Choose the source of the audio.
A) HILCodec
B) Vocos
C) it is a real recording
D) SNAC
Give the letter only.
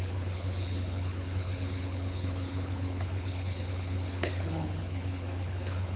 A